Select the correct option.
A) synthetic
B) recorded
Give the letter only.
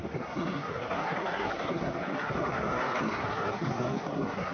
A